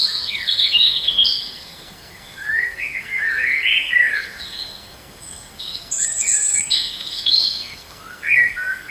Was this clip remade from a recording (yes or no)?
yes